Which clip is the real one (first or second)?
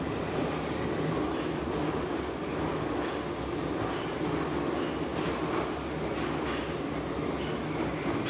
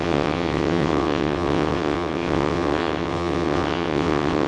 first